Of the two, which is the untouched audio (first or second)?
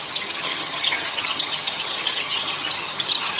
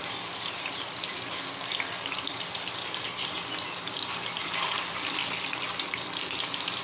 second